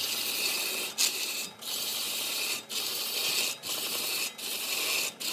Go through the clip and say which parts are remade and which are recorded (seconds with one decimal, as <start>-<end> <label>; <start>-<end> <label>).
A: 0.0-5.3 recorded